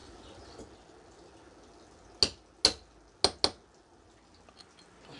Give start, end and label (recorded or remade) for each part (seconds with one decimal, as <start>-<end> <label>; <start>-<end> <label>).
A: 0.0-5.2 recorded